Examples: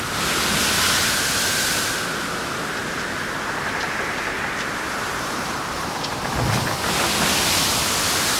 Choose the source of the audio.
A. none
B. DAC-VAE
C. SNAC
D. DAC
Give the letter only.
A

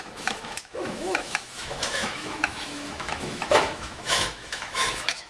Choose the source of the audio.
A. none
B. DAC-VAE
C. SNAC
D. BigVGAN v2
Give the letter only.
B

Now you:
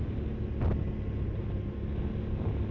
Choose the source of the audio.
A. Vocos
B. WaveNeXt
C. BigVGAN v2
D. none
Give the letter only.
D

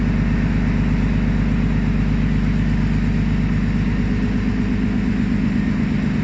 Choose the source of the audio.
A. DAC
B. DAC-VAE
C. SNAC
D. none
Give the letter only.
D